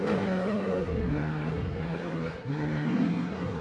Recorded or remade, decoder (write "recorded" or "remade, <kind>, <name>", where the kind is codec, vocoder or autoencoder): remade, codec, SNAC